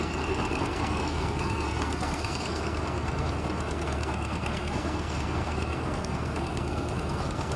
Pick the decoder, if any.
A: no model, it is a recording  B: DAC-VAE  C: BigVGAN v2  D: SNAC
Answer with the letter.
D